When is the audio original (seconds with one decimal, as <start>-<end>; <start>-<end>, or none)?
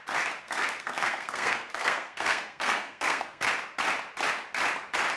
0.0-0.4; 3.5-5.2